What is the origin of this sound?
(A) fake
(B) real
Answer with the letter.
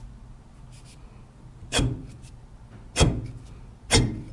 B